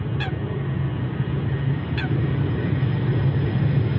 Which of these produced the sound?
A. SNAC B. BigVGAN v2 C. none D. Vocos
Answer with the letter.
C